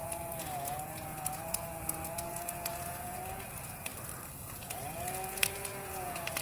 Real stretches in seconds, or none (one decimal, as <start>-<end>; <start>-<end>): 3.9-4.4